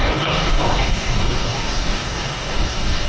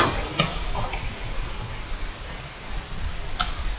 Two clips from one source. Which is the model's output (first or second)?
first